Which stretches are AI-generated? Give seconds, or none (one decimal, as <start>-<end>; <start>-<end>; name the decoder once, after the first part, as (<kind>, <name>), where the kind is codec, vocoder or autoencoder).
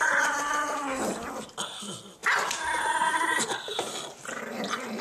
none